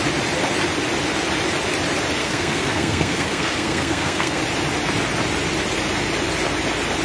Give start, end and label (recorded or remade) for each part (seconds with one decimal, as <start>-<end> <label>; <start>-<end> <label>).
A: 0.0-2.2 recorded; 2.2-4.4 remade; 4.4-7.0 recorded